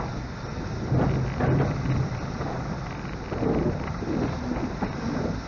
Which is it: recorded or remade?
recorded